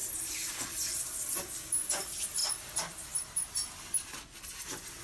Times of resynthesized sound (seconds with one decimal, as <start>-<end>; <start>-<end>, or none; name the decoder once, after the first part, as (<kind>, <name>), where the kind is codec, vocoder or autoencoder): 0.9-2.4 (vocoder, BigVGAN v2)